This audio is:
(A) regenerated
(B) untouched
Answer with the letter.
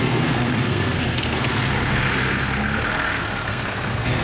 A